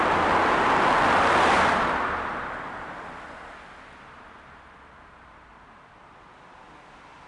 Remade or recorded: recorded